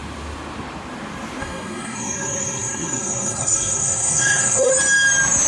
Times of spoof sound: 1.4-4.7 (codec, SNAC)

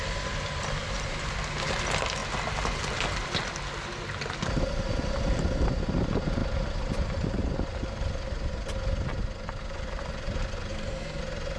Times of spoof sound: 10.7-11.2 (codec, SNAC)

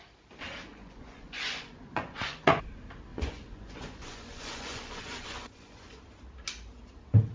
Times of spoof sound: 0.7-2.6 (vocoder, Vocos); 3.1-6.0

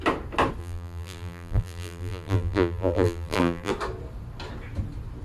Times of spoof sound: 0.6-3.7 (vocoder, BigVGAN v2)

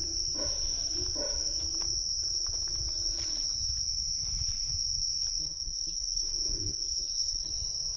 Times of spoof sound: 5.4-7.5 (codec, SNAC)

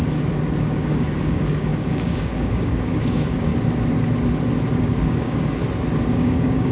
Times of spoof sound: 0.6-3.5 (codec, DAC); 4.8-5.6; 6.2-6.7

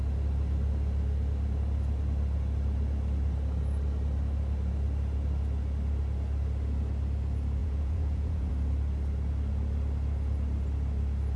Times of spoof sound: 7.6-8.5 (vocoder, Vocos)

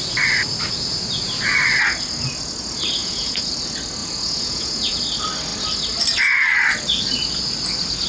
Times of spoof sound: 3.0-3.5 (vocoder, Vocos); 4.0-5.0